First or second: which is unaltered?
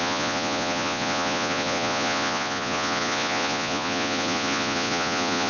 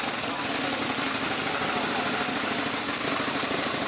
second